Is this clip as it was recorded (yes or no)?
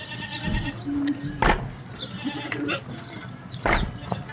yes